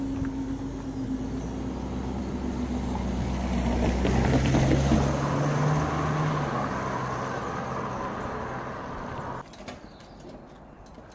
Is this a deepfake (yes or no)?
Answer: no